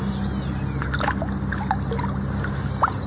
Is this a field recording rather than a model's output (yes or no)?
yes